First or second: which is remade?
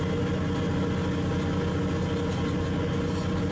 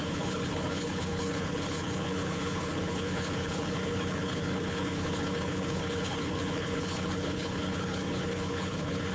second